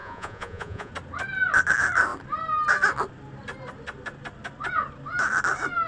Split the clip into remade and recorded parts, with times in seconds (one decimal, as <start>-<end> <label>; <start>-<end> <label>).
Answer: 0.0-0.9 remade; 0.9-5.9 recorded